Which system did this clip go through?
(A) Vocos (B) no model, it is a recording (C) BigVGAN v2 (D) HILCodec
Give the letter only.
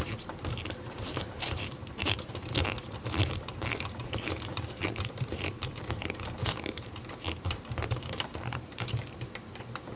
C